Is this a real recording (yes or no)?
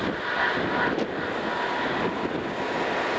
yes